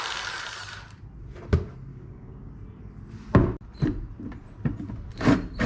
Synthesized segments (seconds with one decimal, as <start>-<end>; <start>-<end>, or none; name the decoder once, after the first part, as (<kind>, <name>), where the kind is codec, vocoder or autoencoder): 1.9-2.5 (codec, DAC)